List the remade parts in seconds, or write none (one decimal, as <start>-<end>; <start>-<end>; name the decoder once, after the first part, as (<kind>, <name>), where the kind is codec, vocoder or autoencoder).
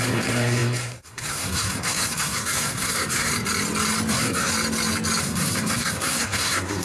0.0-3.3 (codec, SNAC); 4.1-4.5; 5.2-6.8